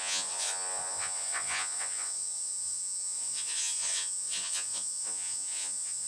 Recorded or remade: remade